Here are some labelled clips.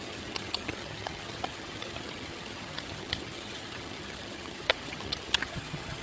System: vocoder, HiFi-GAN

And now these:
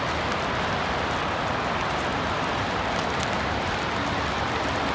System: none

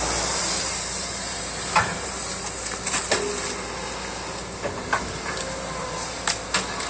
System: none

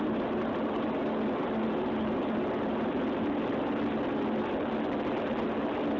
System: none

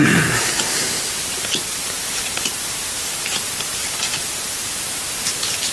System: vocoder, BigVGAN v2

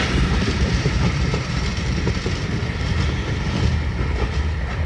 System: vocoder, BigVGAN v2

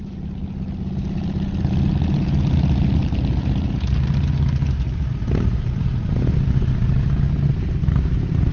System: none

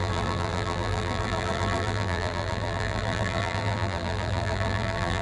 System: vocoder, BigVGAN v2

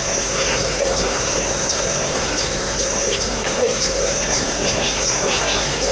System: codec, SNAC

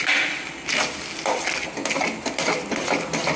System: none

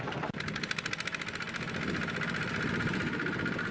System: none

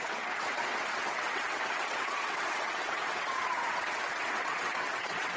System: vocoder, WaveNeXt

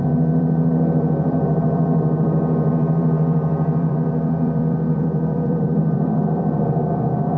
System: vocoder, BigVGAN v2